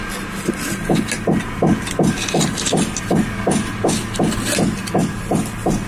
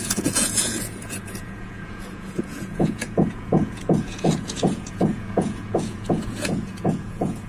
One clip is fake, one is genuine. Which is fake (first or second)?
second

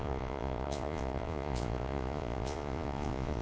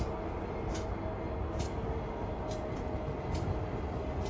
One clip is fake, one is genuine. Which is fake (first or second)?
first